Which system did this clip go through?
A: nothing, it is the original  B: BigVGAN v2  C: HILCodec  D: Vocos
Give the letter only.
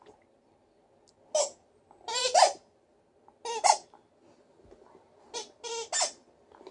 A